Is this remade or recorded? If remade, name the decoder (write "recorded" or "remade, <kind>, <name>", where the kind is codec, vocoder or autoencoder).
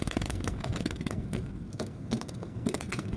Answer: remade, codec, SNAC